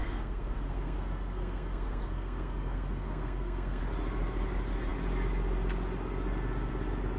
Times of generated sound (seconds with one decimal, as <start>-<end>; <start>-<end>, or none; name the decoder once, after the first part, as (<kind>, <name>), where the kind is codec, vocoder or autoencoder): 0.0-3.8 (codec, SNAC)